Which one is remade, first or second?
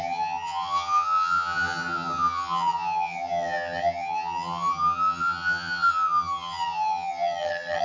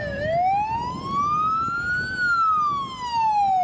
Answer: first